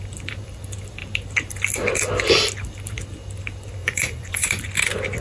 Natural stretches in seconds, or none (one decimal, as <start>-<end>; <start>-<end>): 0.0-3.8; 4.6-5.2